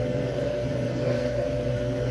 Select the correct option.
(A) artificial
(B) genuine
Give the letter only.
A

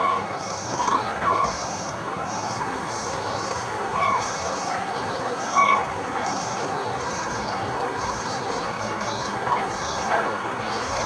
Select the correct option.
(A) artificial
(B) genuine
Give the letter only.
A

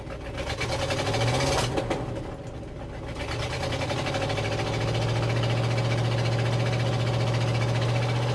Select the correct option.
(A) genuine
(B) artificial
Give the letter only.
A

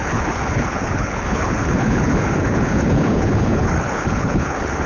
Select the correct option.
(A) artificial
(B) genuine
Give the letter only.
A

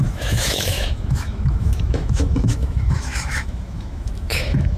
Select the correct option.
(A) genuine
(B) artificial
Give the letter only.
B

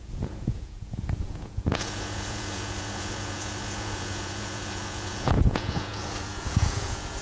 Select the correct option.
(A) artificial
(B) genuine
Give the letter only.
A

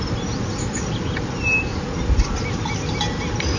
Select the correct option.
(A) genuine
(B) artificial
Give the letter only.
A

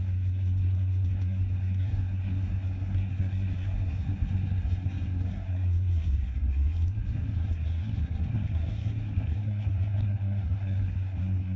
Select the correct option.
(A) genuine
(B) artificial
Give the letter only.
B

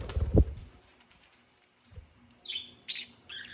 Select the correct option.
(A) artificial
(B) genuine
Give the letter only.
A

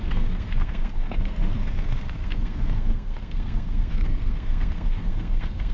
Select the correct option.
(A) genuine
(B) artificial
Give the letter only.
B